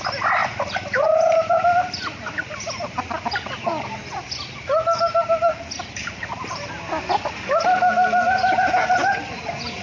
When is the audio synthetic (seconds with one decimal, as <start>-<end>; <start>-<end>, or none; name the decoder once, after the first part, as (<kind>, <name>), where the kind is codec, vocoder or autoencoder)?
none